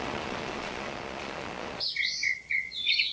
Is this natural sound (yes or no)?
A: no